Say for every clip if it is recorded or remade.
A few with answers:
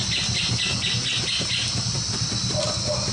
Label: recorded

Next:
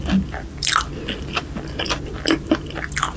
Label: recorded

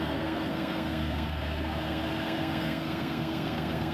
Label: remade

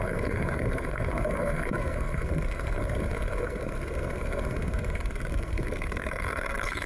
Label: remade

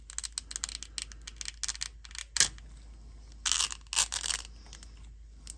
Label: recorded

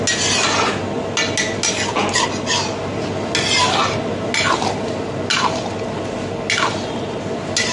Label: recorded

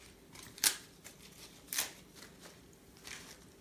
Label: recorded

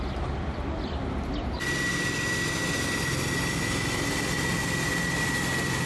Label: recorded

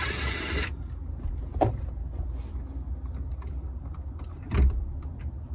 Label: recorded